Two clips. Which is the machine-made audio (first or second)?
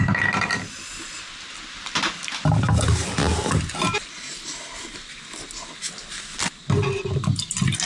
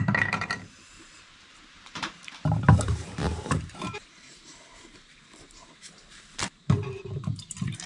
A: second